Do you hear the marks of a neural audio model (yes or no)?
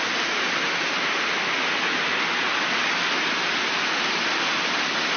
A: no